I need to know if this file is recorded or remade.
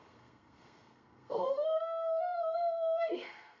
remade